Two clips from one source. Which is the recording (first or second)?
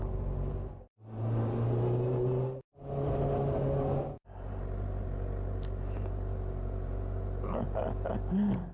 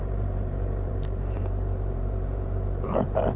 first